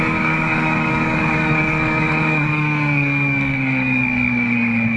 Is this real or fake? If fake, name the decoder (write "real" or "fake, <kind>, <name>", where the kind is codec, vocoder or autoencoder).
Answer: fake, codec, DAC